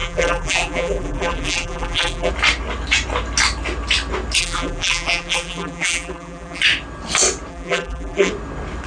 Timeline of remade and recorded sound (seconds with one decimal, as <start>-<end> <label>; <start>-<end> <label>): 0.0-2.3 remade; 2.3-4.4 recorded; 4.4-6.6 remade; 6.6-7.5 recorded; 7.5-8.3 remade; 8.3-8.9 recorded